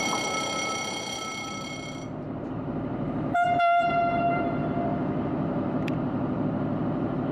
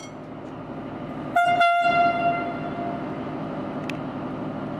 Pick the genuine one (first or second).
second